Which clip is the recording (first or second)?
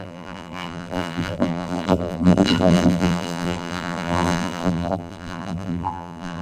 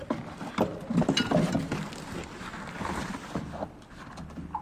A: second